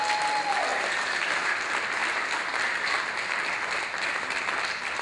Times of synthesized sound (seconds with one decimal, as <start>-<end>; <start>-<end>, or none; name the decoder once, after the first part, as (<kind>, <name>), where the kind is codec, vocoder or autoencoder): 0.7-1.5 (vocoder, BigVGAN v2)